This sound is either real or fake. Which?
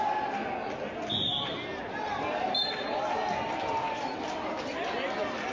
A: real